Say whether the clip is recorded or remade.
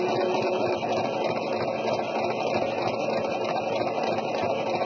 recorded